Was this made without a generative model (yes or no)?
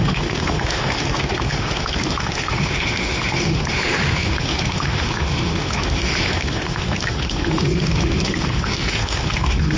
no